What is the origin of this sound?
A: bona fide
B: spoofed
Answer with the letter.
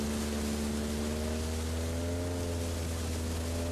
A